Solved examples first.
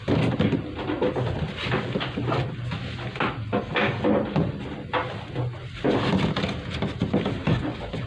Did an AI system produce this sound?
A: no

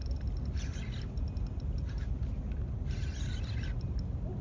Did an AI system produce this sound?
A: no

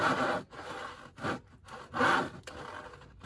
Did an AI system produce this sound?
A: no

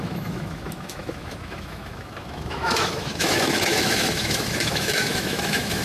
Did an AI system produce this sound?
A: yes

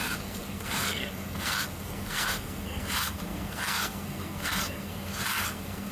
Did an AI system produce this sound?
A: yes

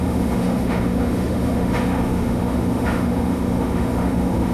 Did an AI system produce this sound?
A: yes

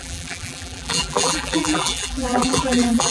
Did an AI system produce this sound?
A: yes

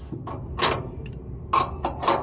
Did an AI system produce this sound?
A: no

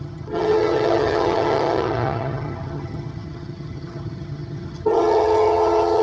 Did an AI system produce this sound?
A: yes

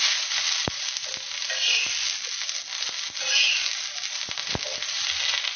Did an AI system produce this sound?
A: no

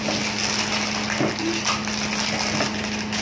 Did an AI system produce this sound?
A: no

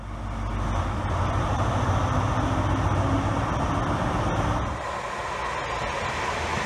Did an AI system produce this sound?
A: no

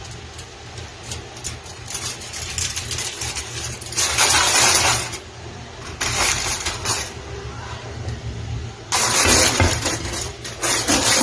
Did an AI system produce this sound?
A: no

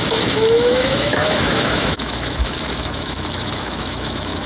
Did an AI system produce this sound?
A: yes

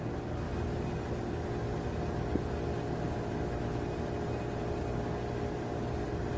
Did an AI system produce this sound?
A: no